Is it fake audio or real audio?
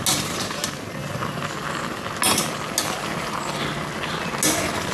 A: real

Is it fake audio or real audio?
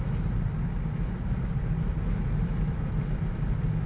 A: real